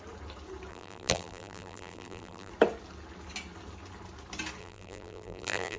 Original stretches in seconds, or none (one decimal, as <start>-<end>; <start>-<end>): 0.0-0.7; 2.5-4.6